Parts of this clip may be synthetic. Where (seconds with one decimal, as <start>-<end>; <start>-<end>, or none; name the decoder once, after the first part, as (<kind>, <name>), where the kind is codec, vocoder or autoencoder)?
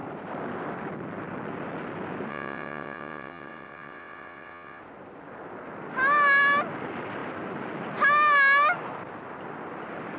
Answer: 2.3-4.8 (vocoder, WaveNeXt)